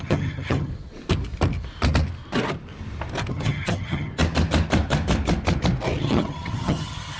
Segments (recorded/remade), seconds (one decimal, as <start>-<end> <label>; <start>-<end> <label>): 0.0-0.7 remade; 0.7-3.3 recorded; 3.3-4.1 remade; 4.1-6.0 recorded; 6.0-7.2 remade